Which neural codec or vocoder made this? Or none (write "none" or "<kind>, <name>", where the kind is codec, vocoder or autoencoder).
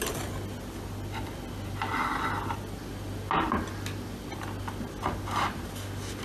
none